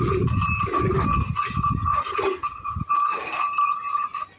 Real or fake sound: real